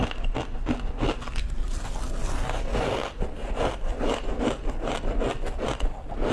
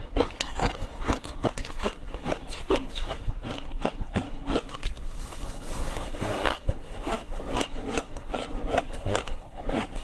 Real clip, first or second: first